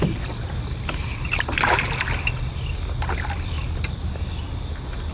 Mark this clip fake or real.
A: real